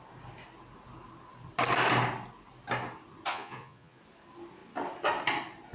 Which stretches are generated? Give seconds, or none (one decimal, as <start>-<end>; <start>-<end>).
3.3-4.0